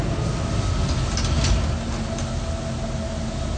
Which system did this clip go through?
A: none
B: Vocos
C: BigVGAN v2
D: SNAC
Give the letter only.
A